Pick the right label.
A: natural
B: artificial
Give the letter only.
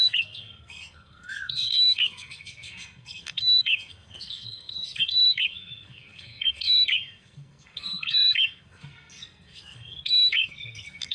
B